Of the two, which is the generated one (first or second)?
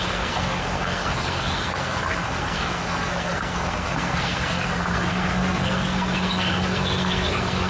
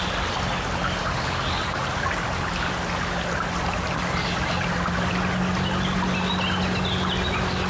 first